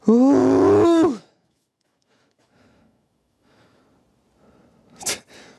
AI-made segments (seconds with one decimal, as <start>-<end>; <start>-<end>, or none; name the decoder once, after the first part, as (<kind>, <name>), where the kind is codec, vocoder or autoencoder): 0.4-3.8 (autoencoder, DAC-VAE)

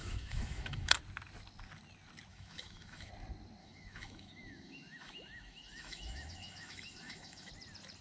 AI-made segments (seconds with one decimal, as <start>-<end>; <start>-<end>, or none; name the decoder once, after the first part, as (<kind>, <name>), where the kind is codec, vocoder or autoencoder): 0.0-1.0 (autoencoder, DAC-VAE); 2.3-3.1; 3.6-7.5

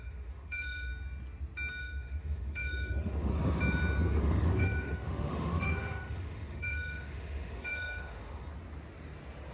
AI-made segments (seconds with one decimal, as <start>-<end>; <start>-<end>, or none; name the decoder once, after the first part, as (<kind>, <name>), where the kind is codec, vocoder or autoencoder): 0.0-0.9 (autoencoder, DAC-VAE); 1.8-3.3; 4.2-8.5

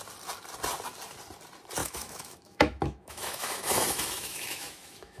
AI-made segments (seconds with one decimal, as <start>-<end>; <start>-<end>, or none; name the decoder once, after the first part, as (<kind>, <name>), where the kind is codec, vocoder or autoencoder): 1.8-5.2 (autoencoder, DAC-VAE)

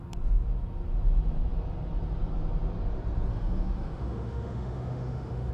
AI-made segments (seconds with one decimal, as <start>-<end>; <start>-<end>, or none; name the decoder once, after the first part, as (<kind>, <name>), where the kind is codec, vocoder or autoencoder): 3.3-5.5 (autoencoder, DAC-VAE)

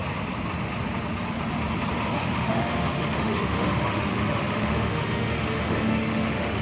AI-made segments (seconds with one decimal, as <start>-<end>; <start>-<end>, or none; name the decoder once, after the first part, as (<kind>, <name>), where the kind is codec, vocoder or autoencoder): 2.2-6.6 (autoencoder, DAC-VAE)

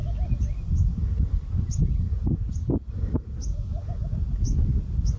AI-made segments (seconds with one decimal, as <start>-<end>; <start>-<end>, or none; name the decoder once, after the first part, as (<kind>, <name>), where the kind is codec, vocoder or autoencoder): none